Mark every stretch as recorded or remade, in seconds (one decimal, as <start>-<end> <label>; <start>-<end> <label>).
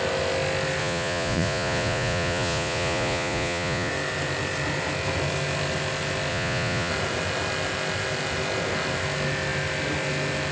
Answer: 0.0-0.8 recorded; 0.8-3.9 remade; 3.9-6.3 recorded; 6.3-6.9 remade; 6.9-10.5 recorded